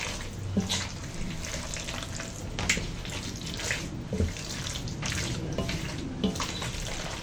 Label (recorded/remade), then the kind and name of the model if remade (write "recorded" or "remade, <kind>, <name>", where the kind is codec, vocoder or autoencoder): recorded